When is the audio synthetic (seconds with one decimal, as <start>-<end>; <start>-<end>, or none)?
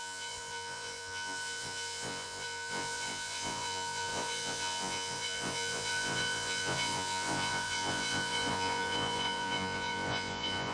0.0-10.7